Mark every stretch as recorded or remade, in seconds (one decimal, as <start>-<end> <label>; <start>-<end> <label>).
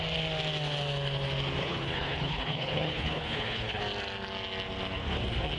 0.0-1.6 recorded; 1.6-3.8 remade; 3.8-5.6 recorded